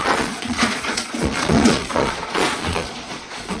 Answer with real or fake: fake